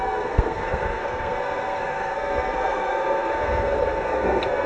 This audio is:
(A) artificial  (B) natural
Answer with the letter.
A